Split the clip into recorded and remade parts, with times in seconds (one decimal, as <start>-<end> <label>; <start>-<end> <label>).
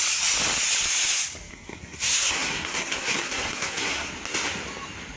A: 0.0-1.5 recorded; 1.5-4.1 remade; 4.1-5.2 recorded